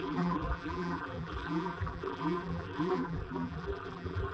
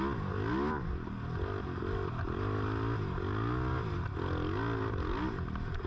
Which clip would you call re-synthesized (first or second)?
first